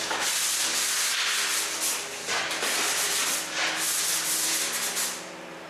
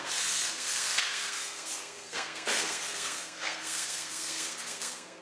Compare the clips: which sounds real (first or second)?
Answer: first